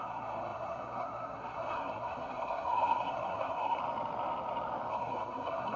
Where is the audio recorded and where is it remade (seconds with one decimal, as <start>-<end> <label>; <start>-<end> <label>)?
0.0-3.8 remade; 3.8-4.9 recorded; 4.9-5.8 remade